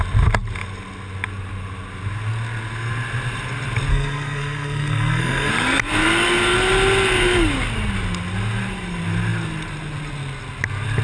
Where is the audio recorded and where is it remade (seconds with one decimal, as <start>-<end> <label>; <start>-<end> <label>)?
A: 0.0-3.9 recorded; 3.9-5.5 remade; 5.5-11.0 recorded